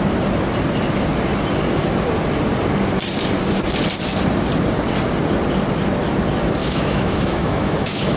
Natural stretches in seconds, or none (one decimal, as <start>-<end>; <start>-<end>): 0.0-6.6